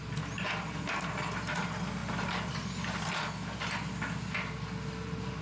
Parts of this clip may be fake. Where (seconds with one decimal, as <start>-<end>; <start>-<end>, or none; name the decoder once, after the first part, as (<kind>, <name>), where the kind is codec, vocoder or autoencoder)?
none